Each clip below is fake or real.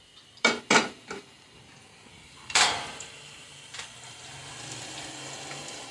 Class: real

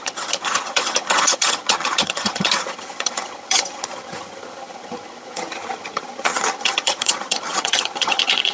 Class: fake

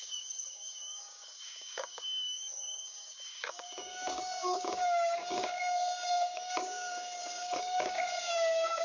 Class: fake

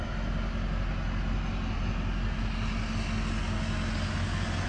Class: real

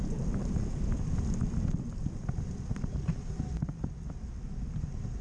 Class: real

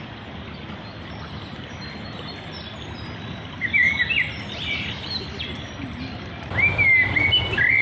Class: real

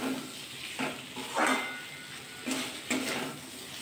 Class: real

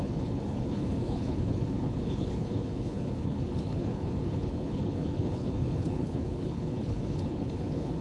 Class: fake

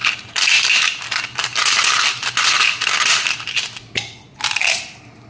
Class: real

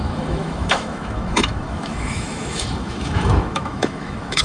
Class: fake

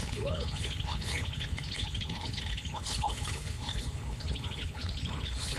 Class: fake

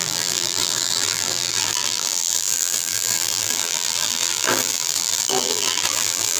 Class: fake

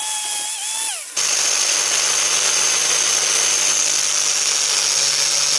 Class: real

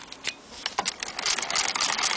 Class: real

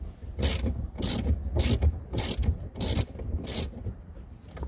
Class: real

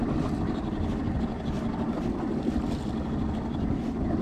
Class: real